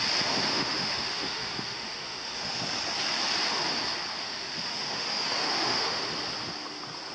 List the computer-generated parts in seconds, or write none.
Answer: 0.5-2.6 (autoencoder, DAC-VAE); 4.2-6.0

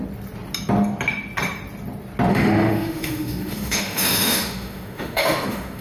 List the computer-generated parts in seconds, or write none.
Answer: 2.3-5.8 (autoencoder, DAC-VAE)

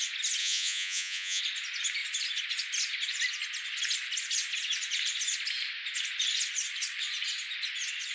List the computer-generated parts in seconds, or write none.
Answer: 0.4-1.4 (vocoder, Vocos)

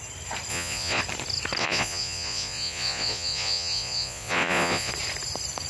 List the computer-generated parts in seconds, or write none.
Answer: 0.5-1.0 (vocoder, Vocos); 1.6-4.9

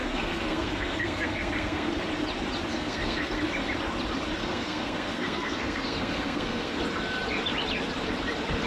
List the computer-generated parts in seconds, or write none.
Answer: 0.0-1.9 (codec, SNAC); 2.7-3.4; 4.4-6.8

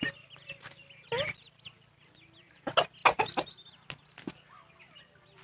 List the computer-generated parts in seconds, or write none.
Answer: none

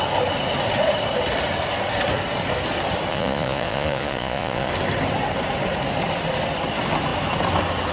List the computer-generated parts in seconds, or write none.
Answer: 3.1-4.7 (vocoder, Vocos)

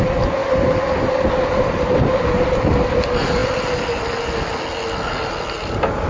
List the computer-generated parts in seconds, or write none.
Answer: none